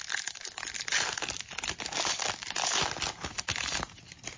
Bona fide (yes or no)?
yes